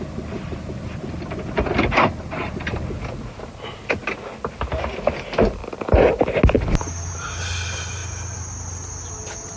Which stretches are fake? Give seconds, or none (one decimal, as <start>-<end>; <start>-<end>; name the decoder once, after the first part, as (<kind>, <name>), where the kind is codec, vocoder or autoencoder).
none